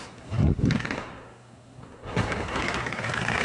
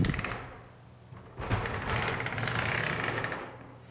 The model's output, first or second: first